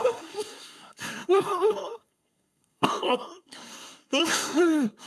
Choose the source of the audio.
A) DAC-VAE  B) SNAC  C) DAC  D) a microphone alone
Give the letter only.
B